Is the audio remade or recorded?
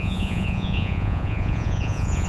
remade